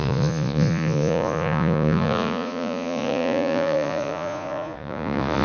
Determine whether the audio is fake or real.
fake